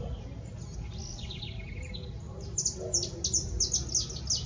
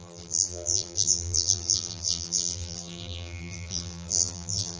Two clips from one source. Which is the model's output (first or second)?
second